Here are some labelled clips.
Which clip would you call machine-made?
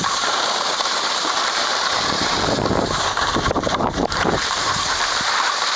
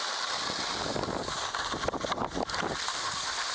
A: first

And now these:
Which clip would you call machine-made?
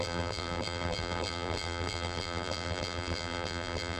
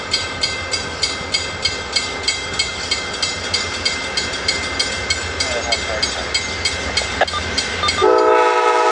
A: first